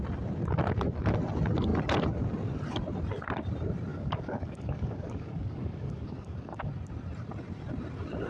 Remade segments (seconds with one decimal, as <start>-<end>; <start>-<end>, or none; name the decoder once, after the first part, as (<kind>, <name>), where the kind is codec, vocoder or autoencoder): 3.9-6.7 (codec, DAC)